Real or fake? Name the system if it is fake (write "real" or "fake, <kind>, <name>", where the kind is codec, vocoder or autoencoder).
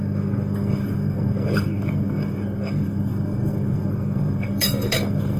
fake, codec, SNAC